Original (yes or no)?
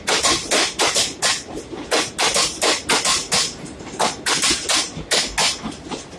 yes